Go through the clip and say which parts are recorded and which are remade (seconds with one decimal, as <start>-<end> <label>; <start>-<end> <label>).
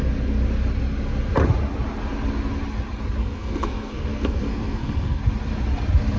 0.0-3.2 recorded; 3.2-5.2 remade; 5.2-6.2 recorded